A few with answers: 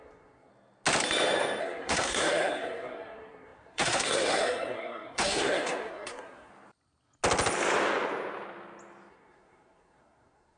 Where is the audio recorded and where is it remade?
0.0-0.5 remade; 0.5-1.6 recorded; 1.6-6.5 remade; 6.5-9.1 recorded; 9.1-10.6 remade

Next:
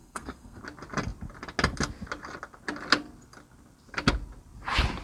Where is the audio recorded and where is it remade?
0.0-0.6 remade; 0.6-5.0 recorded

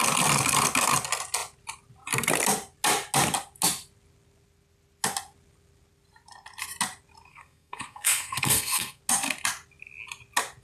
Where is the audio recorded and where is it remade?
0.0-7.3 recorded; 7.3-9.0 remade; 9.0-10.6 recorded

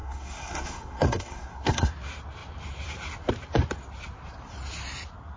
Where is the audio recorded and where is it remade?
0.0-1.9 remade; 1.9-5.4 recorded